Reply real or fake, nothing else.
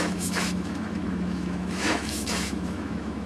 fake